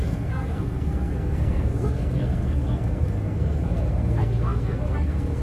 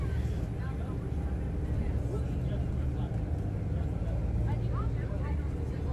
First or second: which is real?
second